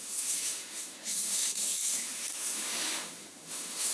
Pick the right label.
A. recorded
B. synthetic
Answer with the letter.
B